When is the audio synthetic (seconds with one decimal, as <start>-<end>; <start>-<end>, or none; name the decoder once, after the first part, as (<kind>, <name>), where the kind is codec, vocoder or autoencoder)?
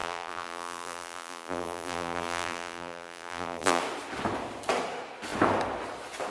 0.0-3.8 (vocoder, BigVGAN v2)